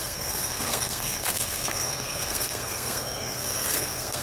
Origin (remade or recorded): remade